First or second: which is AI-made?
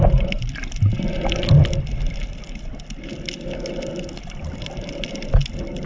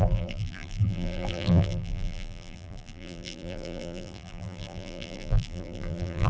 second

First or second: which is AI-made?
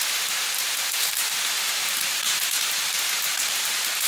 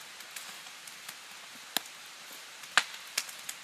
first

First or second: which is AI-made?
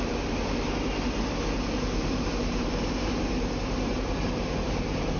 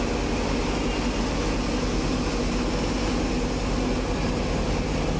first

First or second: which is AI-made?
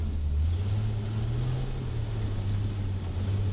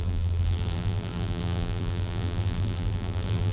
second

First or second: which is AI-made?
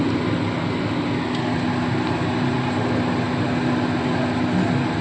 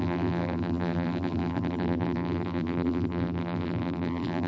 second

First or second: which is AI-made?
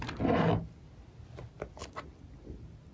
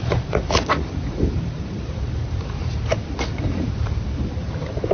second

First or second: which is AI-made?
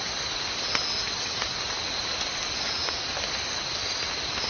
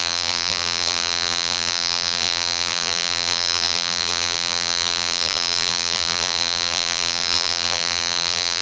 second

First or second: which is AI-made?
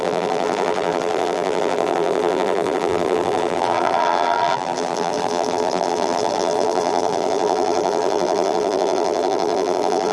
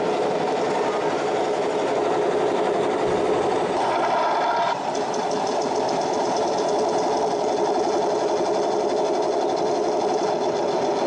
first